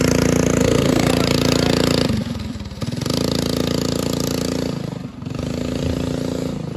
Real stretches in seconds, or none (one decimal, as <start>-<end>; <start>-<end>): 0.0-0.6; 1.1-6.8